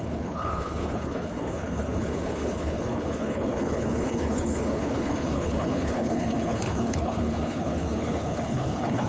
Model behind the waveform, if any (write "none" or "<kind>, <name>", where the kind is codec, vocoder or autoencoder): codec, HILCodec